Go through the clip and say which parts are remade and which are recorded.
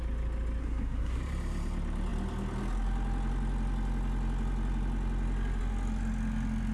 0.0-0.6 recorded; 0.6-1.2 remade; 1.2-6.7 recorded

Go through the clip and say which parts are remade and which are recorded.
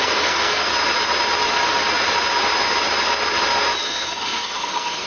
0.0-0.7 remade; 0.7-3.8 recorded; 3.8-5.1 remade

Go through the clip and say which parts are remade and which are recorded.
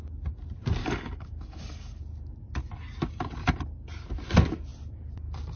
0.0-0.8 recorded; 0.8-2.0 remade; 2.0-5.6 recorded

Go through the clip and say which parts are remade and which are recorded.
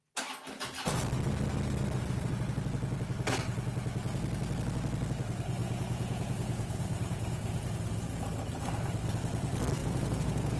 0.0-5.6 recorded; 5.6-7.7 remade; 7.7-9.8 recorded; 9.8-10.6 remade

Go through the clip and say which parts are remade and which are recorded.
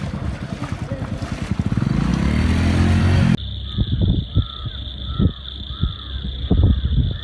0.0-7.2 recorded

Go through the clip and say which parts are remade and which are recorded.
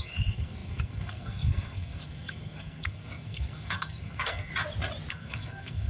0.0-4.5 remade; 4.5-5.1 recorded; 5.1-5.9 remade